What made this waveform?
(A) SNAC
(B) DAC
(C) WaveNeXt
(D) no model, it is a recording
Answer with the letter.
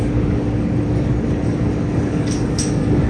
B